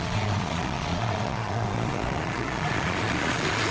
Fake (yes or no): yes